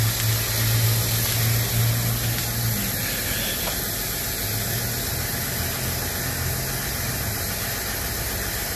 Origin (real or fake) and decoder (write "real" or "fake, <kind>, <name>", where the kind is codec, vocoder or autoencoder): real